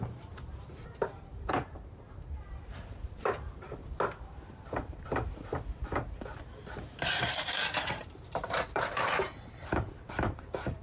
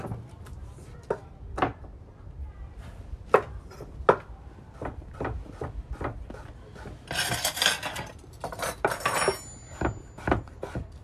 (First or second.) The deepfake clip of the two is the first